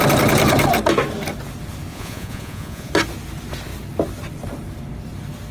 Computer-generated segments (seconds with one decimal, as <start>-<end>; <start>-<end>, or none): 1.9-2.9